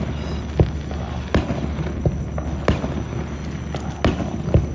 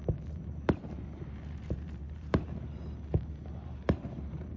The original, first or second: first